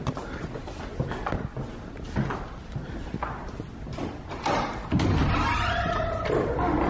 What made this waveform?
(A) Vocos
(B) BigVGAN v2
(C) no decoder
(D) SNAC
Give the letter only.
C